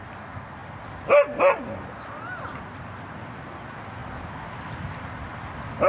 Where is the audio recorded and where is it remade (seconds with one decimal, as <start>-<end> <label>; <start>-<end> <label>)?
0.0-5.9 recorded